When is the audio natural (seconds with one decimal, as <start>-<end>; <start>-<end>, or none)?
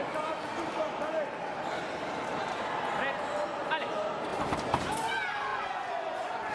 0.0-5.5